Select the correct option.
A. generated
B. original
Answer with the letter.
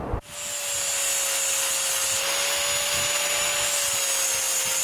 B